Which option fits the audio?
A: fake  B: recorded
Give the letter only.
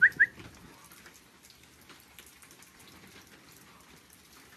B